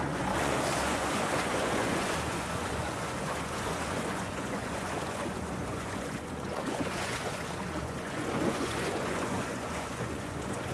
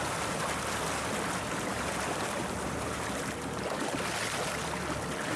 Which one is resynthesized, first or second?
first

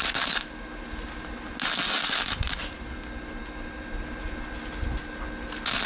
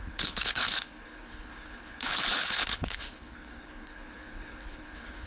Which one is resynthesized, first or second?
second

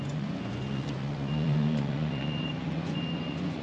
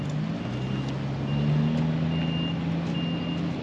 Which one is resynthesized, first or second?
first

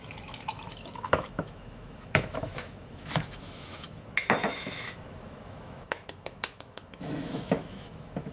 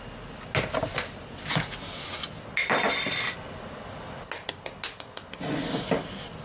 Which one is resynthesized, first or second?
first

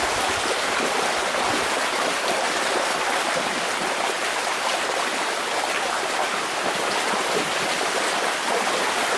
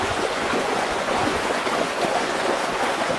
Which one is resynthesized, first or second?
second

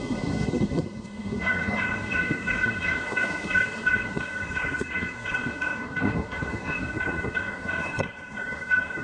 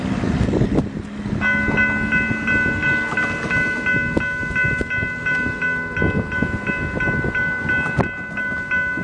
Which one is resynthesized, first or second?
first